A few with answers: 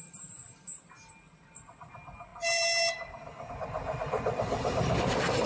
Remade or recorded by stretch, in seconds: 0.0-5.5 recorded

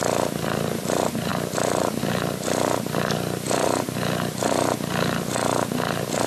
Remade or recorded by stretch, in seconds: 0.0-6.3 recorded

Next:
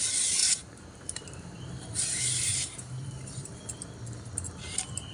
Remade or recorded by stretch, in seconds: 0.0-0.4 recorded; 0.4-3.5 remade; 3.5-5.1 recorded

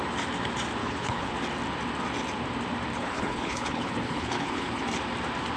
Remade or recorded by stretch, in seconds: 0.0-0.8 recorded; 0.8-1.3 remade; 1.3-2.9 recorded; 2.9-4.8 remade; 4.8-5.6 recorded

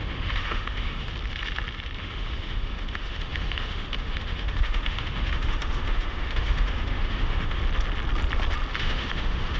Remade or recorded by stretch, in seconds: 0.0-1.1 remade; 1.1-2.0 recorded; 2.0-7.6 remade; 7.6-8.8 recorded; 8.8-9.6 remade

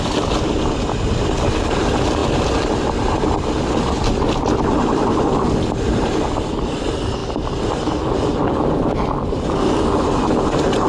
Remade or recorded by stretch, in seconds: 0.0-10.9 recorded